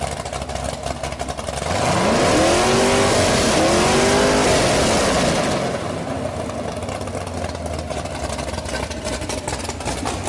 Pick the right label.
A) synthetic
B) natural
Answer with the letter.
B